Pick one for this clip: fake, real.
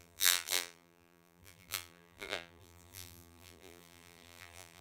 fake